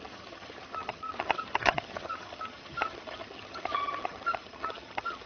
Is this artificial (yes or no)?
yes